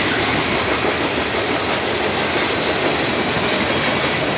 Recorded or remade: recorded